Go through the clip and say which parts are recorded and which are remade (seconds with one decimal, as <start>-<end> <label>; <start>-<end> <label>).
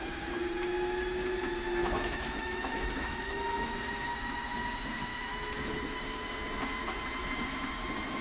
0.0-1.8 recorded; 1.8-3.7 remade; 3.7-5.1 recorded; 5.1-5.7 remade; 5.7-8.2 recorded